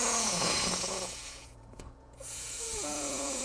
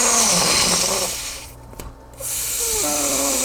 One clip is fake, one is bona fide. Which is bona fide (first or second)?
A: second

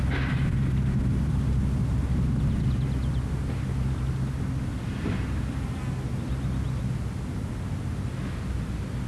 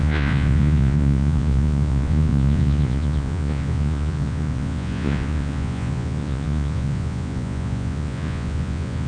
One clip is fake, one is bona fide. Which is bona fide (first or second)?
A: first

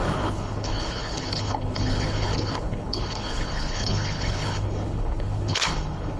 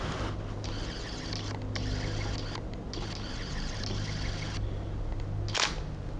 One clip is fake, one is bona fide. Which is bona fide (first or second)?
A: second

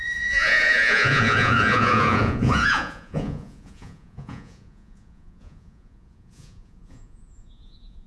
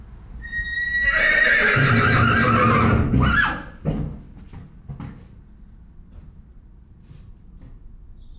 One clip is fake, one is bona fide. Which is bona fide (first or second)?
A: second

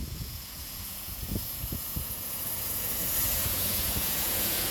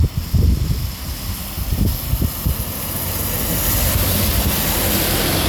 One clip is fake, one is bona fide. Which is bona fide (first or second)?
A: second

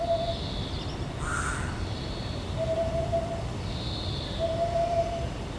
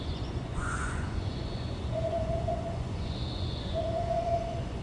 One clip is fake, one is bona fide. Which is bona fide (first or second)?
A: first